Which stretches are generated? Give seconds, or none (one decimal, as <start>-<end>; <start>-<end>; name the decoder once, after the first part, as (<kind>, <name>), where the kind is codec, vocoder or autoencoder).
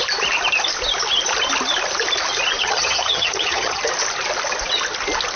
2.6-3.8 (vocoder, HiFi-GAN)